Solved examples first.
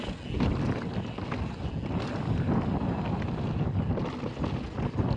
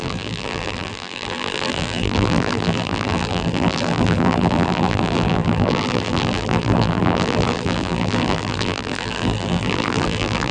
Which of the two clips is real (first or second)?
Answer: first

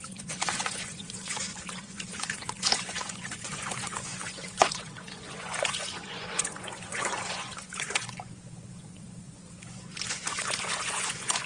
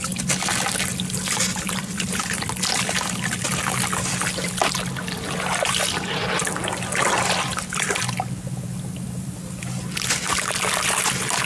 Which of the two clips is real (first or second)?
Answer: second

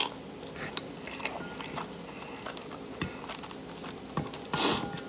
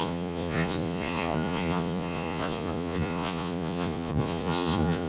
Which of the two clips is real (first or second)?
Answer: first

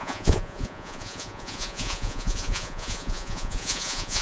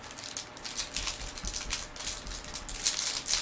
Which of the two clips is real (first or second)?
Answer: second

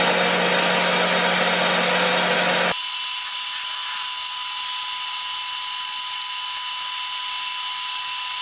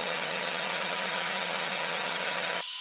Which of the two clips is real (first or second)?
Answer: first